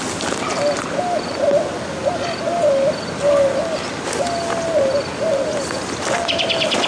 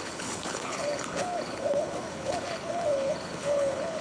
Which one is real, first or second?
first